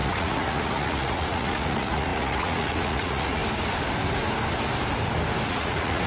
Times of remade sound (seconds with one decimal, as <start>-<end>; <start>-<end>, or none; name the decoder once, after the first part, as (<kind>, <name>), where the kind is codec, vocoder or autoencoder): 0.0-3.4 (vocoder, Vocos); 5.5-6.1